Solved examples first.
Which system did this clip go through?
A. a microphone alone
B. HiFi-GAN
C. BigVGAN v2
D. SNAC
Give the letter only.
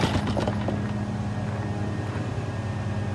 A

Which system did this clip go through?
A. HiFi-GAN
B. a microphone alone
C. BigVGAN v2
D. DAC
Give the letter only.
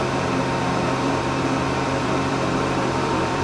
C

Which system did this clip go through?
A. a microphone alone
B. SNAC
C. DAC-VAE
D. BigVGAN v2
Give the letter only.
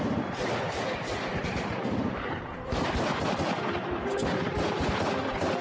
D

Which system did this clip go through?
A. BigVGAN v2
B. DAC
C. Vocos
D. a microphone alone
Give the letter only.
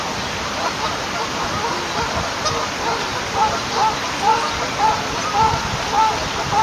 D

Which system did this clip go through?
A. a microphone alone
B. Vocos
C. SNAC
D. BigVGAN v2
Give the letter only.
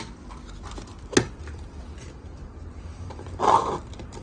D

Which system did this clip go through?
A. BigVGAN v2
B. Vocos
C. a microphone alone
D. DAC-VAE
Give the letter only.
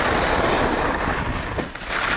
C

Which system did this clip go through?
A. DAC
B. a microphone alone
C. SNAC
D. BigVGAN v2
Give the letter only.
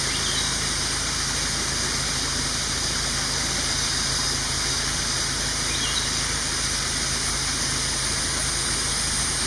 B